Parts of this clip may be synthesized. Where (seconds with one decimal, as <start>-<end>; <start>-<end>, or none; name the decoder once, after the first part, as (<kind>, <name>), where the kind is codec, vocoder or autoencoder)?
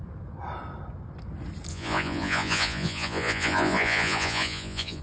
1.7-5.0 (vocoder, Vocos)